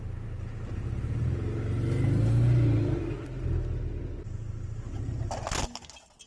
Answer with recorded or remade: recorded